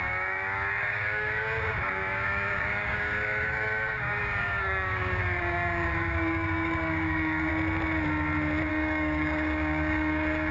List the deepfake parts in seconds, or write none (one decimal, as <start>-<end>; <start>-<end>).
0.0-7.5; 8.7-10.5